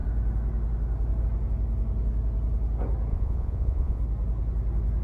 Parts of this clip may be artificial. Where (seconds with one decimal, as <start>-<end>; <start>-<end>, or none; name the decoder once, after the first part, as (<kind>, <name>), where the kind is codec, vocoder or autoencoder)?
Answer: 3.1-4.0 (vocoder, Vocos)